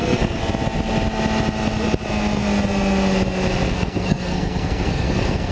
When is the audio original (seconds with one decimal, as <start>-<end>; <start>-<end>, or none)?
0.4-3.7